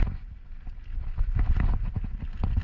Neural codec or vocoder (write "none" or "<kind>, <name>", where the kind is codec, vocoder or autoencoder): none